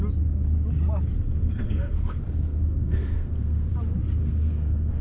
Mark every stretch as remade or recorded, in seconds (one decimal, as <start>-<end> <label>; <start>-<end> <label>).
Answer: 0.0-1.4 recorded; 1.4-3.7 remade; 3.7-4.2 recorded; 4.2-5.0 remade